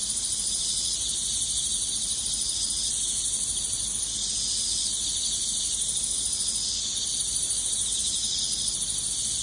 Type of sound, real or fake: real